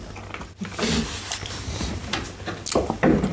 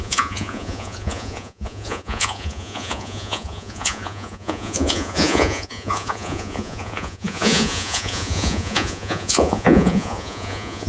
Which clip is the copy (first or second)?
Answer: second